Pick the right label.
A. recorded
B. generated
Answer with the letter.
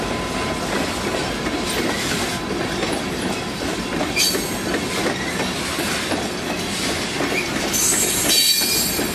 A